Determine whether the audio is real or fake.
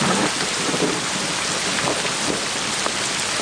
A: fake